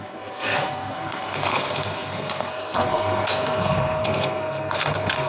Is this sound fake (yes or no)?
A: yes